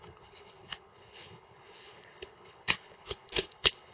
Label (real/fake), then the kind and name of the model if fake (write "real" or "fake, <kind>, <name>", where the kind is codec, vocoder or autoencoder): fake, codec, HILCodec